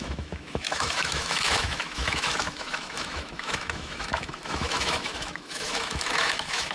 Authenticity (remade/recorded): remade